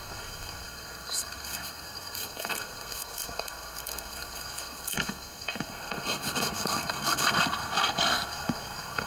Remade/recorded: remade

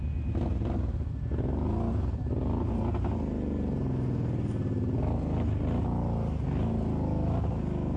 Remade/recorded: recorded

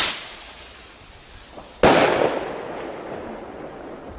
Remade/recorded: recorded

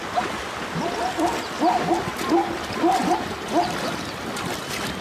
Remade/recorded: recorded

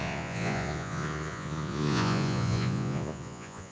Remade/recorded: remade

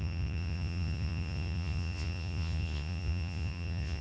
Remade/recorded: remade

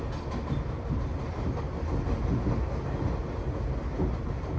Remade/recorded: recorded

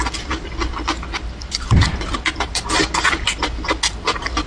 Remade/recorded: recorded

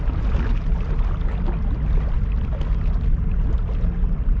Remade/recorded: recorded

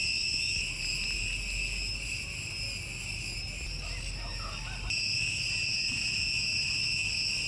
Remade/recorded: recorded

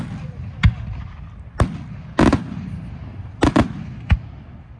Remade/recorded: recorded